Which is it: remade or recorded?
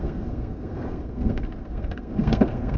remade